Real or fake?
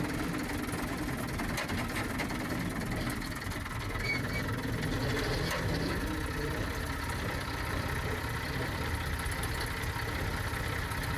real